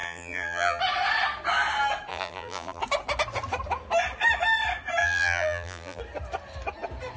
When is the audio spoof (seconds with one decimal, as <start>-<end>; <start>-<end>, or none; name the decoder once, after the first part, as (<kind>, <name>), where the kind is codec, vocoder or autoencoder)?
0.0-0.8 (vocoder, BigVGAN v2); 2.1-2.8; 5.0-6.0